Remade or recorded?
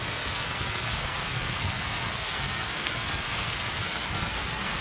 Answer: remade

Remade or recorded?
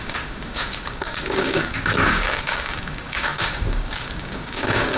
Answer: remade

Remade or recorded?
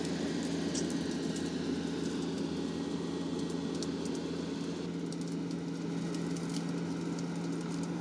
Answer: recorded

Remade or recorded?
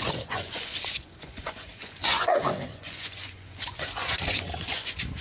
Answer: remade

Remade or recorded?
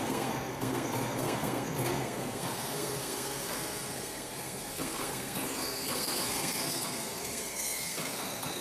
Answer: remade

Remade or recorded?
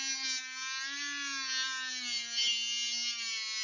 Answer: recorded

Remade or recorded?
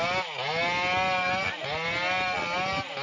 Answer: recorded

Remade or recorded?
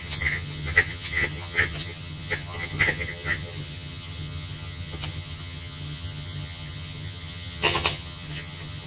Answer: remade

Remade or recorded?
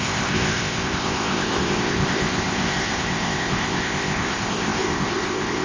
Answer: remade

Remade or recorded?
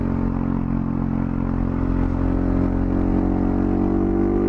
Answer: recorded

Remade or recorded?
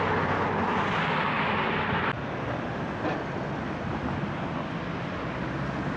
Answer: recorded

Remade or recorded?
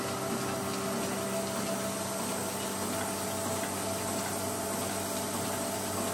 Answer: recorded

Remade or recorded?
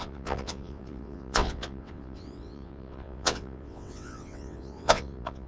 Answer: remade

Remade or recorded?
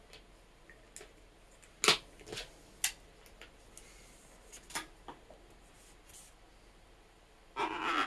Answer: recorded